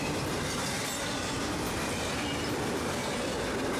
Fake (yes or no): no